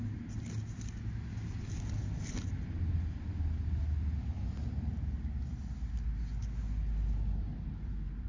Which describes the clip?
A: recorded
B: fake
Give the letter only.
A